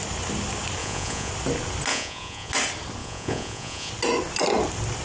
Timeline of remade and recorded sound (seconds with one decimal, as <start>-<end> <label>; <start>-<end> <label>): 0.0-0.8 recorded; 0.8-1.3 remade; 1.3-1.9 recorded; 1.9-2.5 remade; 2.5-3.0 recorded; 3.0-3.9 remade; 3.9-5.0 recorded